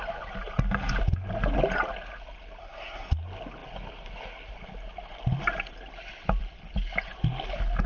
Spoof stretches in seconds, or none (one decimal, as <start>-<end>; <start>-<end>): 2.6-3.1